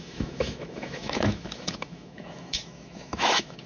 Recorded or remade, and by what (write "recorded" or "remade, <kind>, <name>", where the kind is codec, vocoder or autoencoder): remade, autoencoder, DAC-VAE